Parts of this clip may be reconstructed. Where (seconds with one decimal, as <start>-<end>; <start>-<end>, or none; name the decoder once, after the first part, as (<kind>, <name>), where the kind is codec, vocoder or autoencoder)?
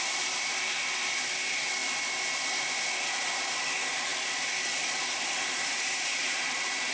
none